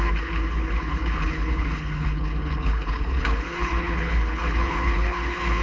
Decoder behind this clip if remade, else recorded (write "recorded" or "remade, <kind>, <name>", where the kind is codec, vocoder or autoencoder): remade, codec, HILCodec